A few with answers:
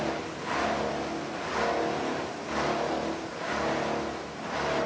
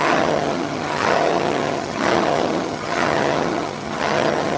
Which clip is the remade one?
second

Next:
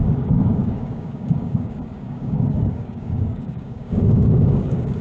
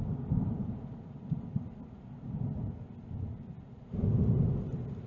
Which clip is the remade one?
first